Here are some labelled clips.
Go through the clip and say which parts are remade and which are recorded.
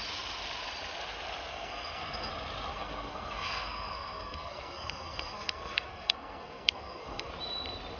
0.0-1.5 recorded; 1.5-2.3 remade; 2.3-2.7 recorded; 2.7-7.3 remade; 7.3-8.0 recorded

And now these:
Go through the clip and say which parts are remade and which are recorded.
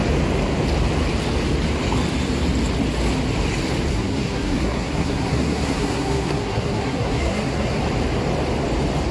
0.0-3.9 recorded; 3.9-7.8 remade; 7.8-9.1 recorded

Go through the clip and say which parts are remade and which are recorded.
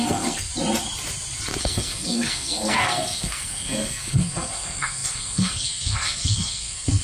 0.0-0.5 remade; 0.5-1.6 recorded; 1.6-7.0 remade